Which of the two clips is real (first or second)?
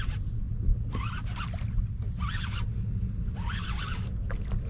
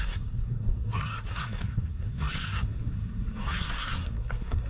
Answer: first